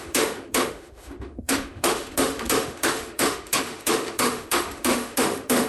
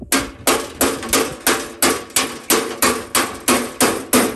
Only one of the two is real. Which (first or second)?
second